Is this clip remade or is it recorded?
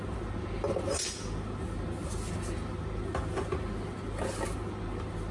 recorded